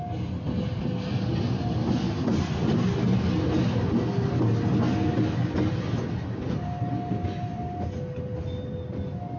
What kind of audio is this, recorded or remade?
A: recorded